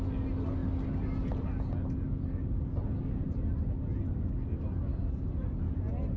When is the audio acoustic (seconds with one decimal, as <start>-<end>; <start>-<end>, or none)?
0.0-6.2